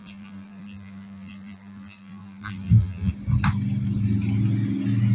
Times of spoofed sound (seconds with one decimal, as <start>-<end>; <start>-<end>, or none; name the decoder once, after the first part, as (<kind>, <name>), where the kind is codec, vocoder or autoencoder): 0.0-3.1 (vocoder, BigVGAN v2)